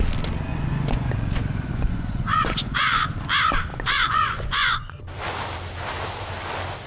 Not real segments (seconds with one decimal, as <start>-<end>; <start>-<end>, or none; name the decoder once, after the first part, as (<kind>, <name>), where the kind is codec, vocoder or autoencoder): 0.5-3.0 (vocoder, Vocos); 3.7-5.0